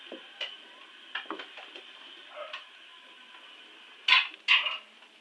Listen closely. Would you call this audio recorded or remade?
recorded